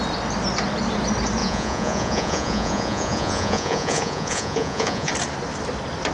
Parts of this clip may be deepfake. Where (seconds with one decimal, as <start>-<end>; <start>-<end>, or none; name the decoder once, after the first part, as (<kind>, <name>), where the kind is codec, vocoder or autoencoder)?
1.4-5.1 (vocoder, Vocos)